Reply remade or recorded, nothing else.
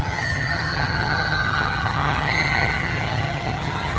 remade